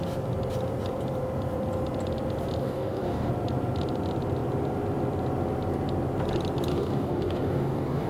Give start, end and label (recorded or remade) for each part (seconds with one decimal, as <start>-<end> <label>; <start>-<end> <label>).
0.0-2.6 recorded; 2.6-3.3 remade; 3.3-6.7 recorded; 6.7-8.1 remade